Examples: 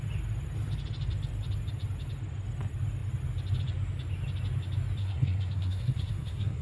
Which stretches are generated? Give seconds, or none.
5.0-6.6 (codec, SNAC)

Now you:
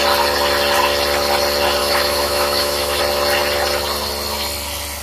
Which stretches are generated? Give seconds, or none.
1.8-3.0 (autoencoder, DAC-VAE)

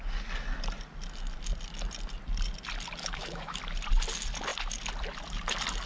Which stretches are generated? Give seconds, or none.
3.0-3.6 (autoencoder, DAC-VAE)

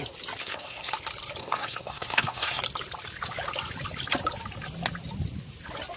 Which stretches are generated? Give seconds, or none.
0.4-0.9 (codec, SNAC); 1.4-2.6

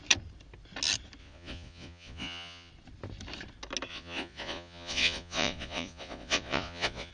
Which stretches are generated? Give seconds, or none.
1.2-2.7 (vocoder, Vocos); 3.9-7.1

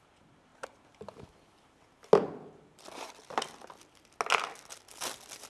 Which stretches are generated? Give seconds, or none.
none

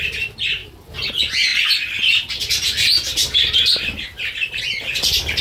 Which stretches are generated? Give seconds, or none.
0.6-1.1 (vocoder, BigVGAN v2)